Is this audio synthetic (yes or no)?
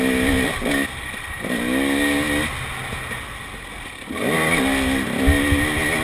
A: no